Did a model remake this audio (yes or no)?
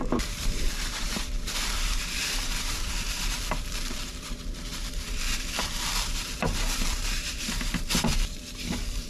yes